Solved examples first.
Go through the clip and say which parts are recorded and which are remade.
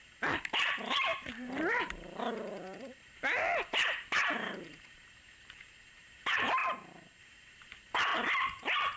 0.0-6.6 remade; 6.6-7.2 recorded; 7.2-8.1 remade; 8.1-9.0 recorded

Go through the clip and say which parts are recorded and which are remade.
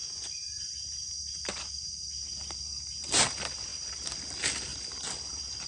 0.0-5.7 recorded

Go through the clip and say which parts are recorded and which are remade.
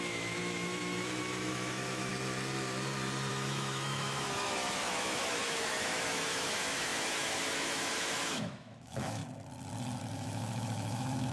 0.0-2.1 remade; 2.1-3.3 recorded; 3.3-9.2 remade; 9.2-10.0 recorded; 10.0-11.3 remade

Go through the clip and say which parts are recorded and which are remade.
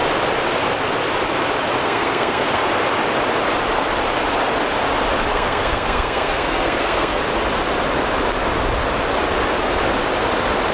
0.0-1.8 recorded; 1.8-2.6 remade; 2.6-5.3 recorded; 5.3-7.2 remade; 7.2-10.7 recorded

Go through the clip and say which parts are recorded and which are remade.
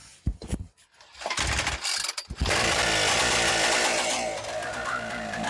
0.0-5.5 recorded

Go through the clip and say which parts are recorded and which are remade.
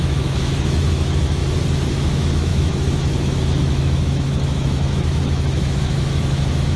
0.0-1.4 remade; 1.4-1.9 recorded; 1.9-6.8 remade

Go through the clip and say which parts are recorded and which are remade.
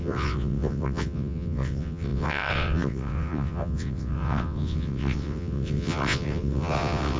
0.0-7.2 remade